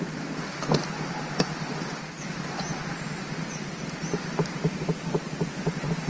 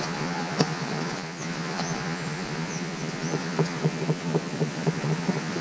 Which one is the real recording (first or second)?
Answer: first